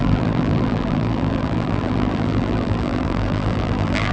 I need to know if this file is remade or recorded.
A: remade